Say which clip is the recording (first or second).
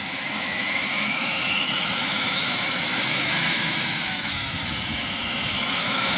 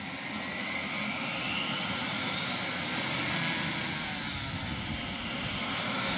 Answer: second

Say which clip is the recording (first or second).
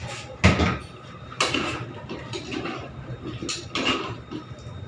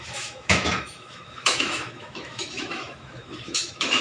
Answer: first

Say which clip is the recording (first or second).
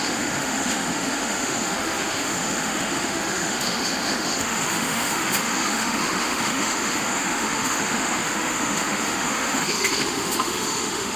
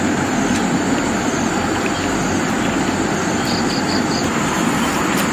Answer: second